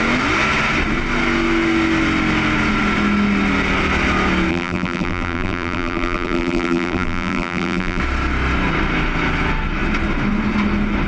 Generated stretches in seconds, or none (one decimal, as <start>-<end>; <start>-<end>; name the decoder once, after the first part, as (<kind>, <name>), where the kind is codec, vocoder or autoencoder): 4.5-8.0 (vocoder, BigVGAN v2)